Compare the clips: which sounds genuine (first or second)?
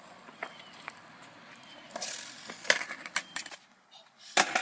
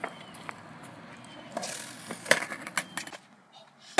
second